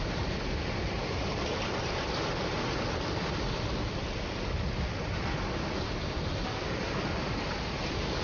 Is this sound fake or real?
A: real